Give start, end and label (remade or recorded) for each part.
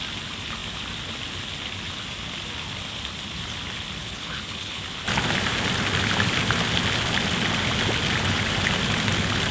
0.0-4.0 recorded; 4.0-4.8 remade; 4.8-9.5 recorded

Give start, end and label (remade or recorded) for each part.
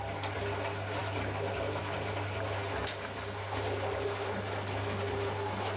0.0-5.8 recorded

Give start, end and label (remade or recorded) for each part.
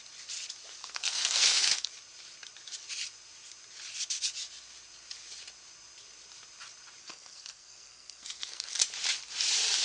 0.0-0.8 recorded; 0.8-1.9 remade; 1.9-7.0 recorded; 7.0-8.7 remade; 8.7-9.8 recorded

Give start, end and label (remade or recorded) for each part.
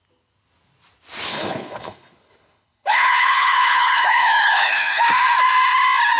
0.0-1.3 recorded; 1.3-5.0 remade; 5.0-6.2 recorded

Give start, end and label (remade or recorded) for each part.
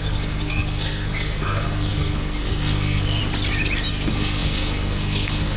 0.0-3.2 remade; 3.2-3.9 recorded; 3.9-5.6 remade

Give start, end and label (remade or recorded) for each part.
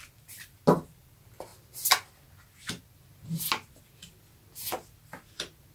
0.0-5.7 recorded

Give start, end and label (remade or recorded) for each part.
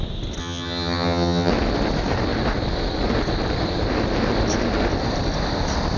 0.0-0.4 recorded; 0.4-1.5 remade; 1.5-6.0 recorded